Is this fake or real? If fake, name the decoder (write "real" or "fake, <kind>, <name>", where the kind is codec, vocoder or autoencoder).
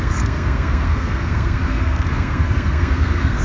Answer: fake, codec, SNAC